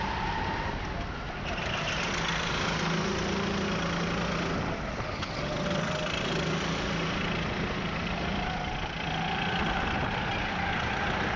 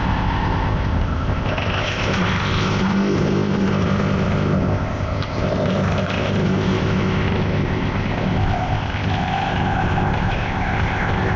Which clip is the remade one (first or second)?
second